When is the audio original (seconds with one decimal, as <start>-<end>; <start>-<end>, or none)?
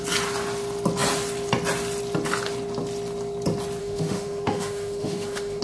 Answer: 0.0-3.8